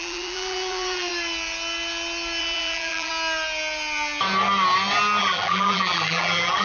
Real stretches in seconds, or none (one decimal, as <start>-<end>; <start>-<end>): 1.1-2.4; 3.1-5.2